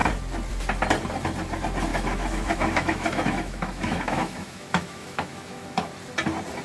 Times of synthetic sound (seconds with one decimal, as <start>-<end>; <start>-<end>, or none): 1.9-5.9